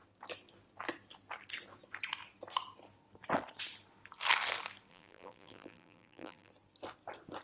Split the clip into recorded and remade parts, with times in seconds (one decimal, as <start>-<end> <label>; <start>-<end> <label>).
0.0-4.9 recorded; 4.9-6.5 remade; 6.5-7.4 recorded